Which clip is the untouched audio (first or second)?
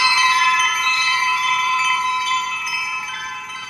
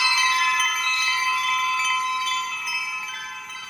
second